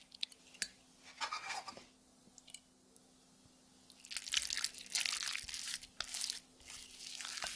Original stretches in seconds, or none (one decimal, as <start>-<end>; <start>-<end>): 0.0-1.3; 1.8-7.6